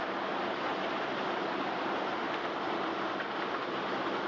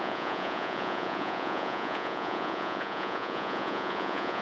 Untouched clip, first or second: first